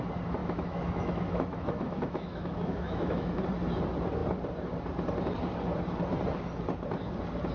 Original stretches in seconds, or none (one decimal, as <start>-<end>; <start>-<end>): 0.0-0.4; 3.4-7.5